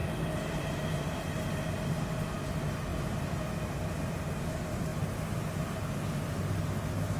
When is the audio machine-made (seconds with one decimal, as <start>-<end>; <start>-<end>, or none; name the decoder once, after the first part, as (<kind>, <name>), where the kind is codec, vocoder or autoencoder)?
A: none

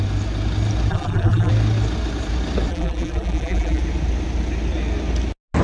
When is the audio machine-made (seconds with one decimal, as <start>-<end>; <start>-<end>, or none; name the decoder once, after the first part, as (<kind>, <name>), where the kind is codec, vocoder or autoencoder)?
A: 0.9-1.5 (vocoder, BigVGAN v2); 2.7-3.8

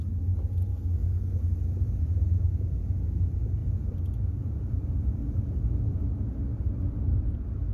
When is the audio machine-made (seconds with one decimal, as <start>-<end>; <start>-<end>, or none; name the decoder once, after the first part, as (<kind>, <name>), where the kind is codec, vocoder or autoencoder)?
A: 0.7-1.4 (codec, SNAC)

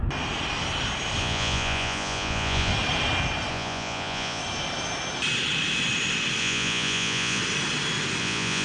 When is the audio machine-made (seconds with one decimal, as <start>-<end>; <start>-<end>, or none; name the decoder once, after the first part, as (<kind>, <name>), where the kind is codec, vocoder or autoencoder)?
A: 1.2-2.7 (vocoder, Vocos); 3.5-4.4; 6.4-7.4; 8.2-8.6